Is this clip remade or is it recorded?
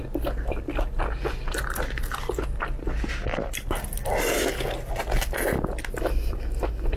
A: recorded